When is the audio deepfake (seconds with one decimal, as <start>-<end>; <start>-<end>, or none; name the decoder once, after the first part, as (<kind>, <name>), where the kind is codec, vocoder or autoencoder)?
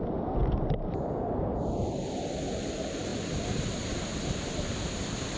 none